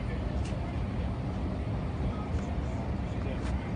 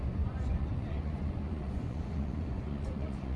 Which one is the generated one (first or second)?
second